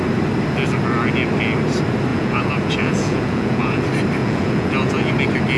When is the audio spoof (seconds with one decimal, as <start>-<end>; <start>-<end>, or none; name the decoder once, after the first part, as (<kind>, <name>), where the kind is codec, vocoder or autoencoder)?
2.1-3.8 (vocoder, Vocos); 4.2-5.1